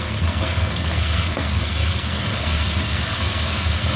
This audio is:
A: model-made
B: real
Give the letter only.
A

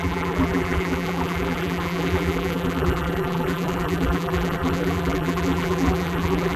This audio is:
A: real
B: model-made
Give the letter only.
B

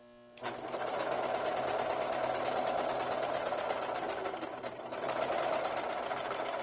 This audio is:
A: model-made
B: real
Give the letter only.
B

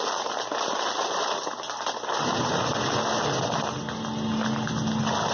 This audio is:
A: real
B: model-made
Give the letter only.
A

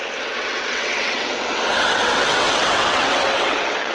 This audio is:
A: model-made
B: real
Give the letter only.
A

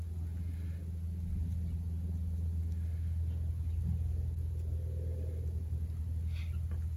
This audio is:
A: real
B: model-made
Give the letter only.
A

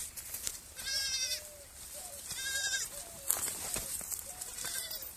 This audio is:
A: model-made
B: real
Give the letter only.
A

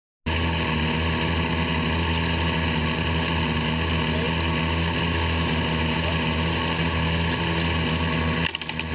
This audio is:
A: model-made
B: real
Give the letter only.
B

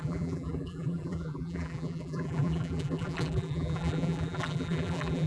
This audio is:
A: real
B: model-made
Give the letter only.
B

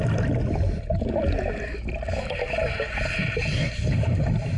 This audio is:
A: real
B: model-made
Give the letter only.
A